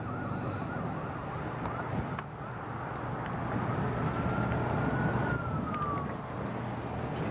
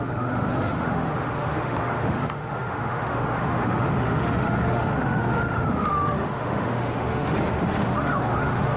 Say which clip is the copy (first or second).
second